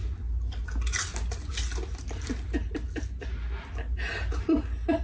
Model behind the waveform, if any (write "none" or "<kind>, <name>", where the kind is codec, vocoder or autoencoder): none